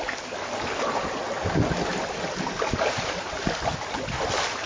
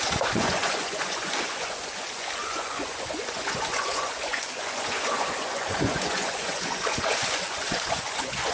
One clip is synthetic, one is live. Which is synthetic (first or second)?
second